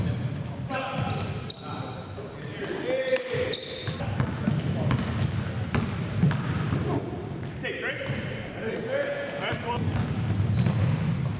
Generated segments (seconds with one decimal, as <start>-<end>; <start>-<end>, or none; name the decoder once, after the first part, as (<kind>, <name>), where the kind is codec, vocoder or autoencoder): 8.8-9.4 (vocoder, Vocos)